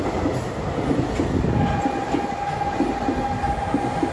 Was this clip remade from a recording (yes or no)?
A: no